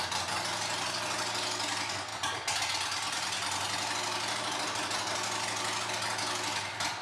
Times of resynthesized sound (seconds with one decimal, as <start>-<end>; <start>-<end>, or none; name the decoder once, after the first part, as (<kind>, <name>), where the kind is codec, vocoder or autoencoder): none